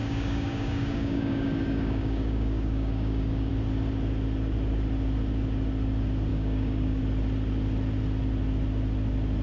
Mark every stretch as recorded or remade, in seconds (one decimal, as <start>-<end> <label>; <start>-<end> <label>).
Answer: 0.0-3.5 remade; 3.5-6.3 recorded; 6.3-7.0 remade; 7.0-9.4 recorded